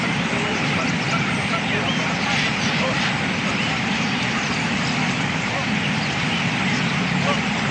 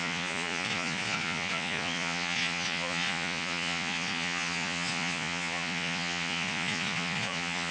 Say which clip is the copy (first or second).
second